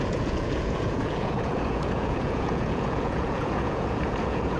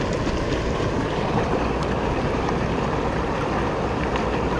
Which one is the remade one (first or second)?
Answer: first